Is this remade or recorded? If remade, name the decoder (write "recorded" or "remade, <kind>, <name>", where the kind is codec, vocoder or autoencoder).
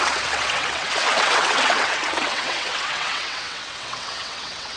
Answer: remade, vocoder, WaveNeXt